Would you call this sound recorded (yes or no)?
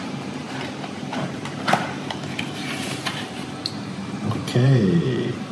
no